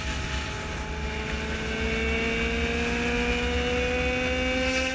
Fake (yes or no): no